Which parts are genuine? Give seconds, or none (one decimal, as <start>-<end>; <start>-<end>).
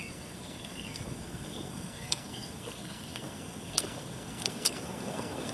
none